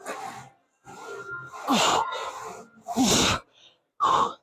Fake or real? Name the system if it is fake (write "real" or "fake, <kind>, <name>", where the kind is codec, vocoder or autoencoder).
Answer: real